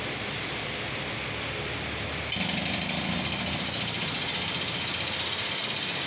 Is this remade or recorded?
recorded